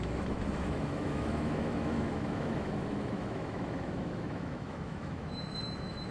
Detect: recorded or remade remade